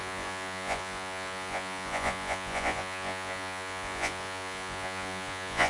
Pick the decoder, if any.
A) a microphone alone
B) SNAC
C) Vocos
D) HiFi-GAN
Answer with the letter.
C